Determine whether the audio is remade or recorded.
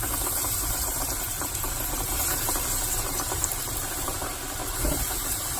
remade